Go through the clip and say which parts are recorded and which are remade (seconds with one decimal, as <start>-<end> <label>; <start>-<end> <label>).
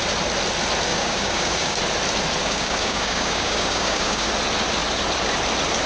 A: 0.0-0.9 recorded; 0.9-1.8 remade; 1.8-2.4 recorded; 2.4-4.3 remade; 4.3-5.9 recorded